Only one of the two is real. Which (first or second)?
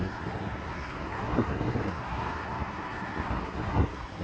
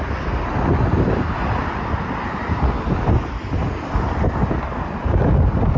second